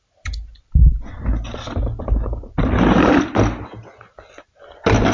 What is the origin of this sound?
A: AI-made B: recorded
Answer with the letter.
B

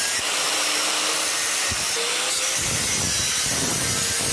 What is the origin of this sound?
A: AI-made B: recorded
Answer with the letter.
A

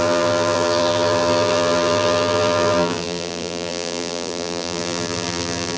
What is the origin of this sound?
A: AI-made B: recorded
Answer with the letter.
A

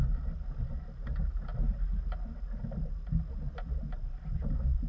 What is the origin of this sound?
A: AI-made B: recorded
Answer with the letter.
B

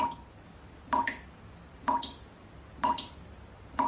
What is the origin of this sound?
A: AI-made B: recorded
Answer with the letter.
A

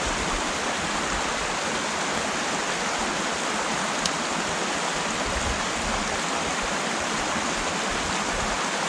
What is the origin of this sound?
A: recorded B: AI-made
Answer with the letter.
A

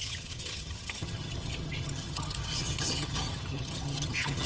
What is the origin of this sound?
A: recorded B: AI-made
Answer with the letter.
B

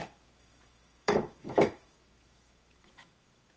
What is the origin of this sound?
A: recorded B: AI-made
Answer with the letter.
B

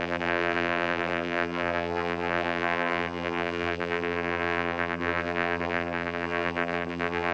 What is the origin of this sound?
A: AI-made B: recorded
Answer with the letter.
A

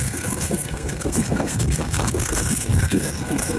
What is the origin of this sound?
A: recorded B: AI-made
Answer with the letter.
B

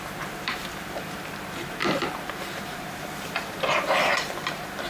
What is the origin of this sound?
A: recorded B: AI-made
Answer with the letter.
B